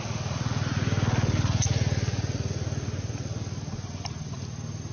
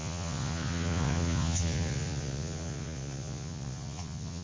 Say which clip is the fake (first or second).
second